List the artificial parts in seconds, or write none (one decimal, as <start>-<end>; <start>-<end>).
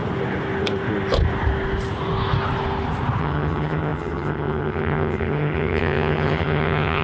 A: 3.2-7.0